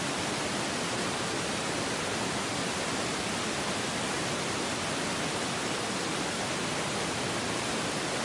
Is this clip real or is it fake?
real